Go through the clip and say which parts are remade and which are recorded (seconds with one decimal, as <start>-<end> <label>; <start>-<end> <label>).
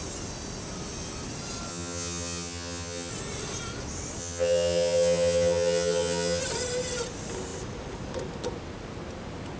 0.0-1.7 recorded; 1.7-3.1 remade; 3.1-4.2 recorded; 4.2-6.4 remade; 6.4-9.6 recorded